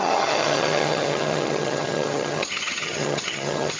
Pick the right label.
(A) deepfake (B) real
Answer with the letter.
A